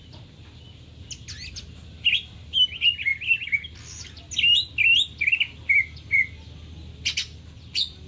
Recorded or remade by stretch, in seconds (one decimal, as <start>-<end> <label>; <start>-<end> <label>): 0.0-8.1 recorded